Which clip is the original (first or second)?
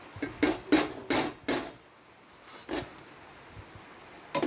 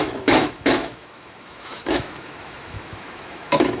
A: first